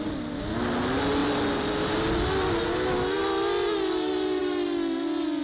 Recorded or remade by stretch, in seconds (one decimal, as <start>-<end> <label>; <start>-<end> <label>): 0.0-5.4 recorded